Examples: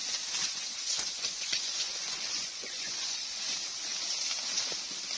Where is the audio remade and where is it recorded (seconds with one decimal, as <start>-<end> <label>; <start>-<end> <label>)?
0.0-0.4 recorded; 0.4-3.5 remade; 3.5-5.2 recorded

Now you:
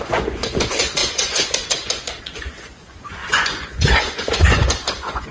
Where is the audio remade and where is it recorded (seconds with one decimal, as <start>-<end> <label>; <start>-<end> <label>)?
0.0-5.3 remade

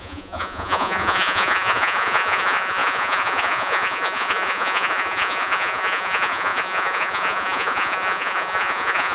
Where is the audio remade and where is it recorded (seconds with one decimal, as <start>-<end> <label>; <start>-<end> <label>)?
0.0-9.1 remade

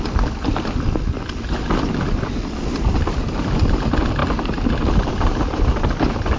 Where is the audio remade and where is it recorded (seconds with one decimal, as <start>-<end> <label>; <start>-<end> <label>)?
0.0-6.4 recorded

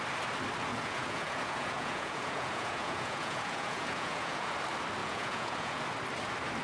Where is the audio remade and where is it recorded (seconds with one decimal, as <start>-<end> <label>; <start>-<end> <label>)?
0.0-0.7 recorded; 0.7-4.5 remade; 4.5-5.0 recorded; 5.0-5.8 remade; 5.8-6.6 recorded

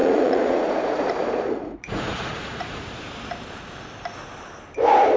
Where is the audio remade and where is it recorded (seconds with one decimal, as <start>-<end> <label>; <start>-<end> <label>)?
0.0-3.1 remade; 3.1-5.2 recorded

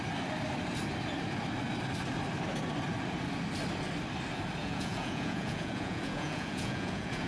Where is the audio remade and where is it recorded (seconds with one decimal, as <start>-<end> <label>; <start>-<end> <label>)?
0.0-4.6 recorded; 4.6-7.3 remade